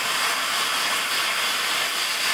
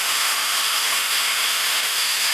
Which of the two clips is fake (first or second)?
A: second